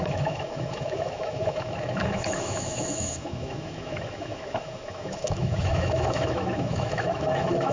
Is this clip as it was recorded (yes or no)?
no